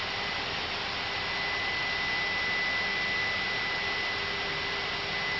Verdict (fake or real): real